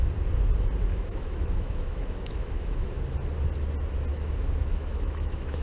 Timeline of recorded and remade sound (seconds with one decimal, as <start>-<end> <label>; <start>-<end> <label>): 0.0-0.9 recorded; 0.9-3.0 remade; 3.0-4.1 recorded; 4.1-5.6 remade